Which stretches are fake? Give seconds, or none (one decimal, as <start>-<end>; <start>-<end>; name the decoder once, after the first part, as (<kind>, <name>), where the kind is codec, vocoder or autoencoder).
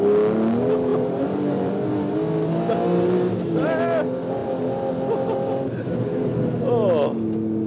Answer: 0.9-1.7 (vocoder, BigVGAN v2)